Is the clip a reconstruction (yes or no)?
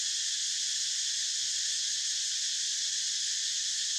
no